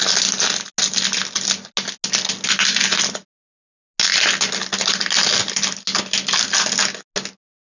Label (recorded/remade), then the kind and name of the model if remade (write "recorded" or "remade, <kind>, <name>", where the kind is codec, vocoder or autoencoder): recorded